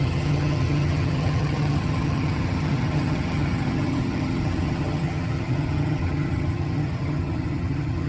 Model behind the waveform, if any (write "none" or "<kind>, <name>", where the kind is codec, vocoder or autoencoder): vocoder, HiFi-GAN